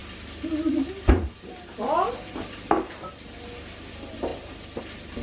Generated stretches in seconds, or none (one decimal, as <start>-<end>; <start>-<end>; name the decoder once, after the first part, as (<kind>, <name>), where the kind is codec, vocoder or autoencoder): none

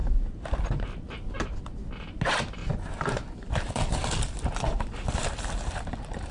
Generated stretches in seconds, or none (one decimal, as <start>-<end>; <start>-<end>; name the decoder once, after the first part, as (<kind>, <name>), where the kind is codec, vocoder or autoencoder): 0.0-0.6 (vocoder, BigVGAN v2); 2.6-6.3

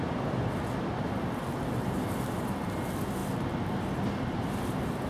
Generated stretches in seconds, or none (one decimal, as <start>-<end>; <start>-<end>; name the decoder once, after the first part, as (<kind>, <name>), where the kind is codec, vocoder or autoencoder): none

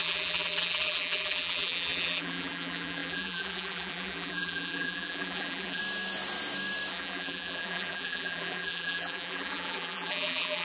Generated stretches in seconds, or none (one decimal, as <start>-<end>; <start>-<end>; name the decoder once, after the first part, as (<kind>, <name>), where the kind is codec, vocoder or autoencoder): 0.0-5.8 (vocoder, BigVGAN v2); 6.9-10.6

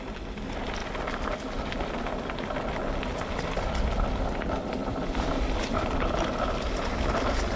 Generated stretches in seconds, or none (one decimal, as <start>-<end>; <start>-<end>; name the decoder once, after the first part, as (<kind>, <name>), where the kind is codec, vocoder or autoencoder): 4.8-6.0 (vocoder, BigVGAN v2)

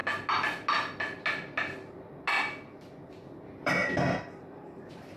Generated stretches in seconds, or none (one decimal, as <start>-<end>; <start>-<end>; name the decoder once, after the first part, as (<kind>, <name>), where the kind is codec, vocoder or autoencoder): 3.1-3.8 (vocoder, BigVGAN v2); 4.4-5.2

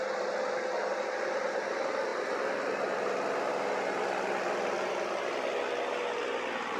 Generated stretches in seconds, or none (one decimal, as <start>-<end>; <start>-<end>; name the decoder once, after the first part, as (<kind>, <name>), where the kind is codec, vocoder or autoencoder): none